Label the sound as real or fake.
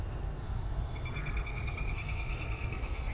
fake